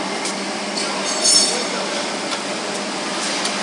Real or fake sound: real